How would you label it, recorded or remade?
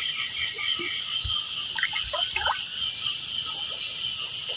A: recorded